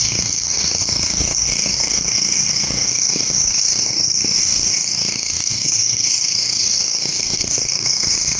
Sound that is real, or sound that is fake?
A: fake